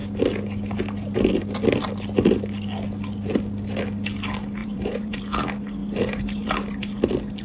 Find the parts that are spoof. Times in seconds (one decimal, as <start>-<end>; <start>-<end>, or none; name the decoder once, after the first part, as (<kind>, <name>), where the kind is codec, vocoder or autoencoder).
4.6-5.2 (vocoder, BigVGAN v2); 5.8-6.5